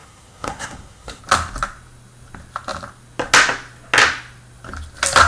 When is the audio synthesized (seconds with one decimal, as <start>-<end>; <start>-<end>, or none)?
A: 0.0-1.2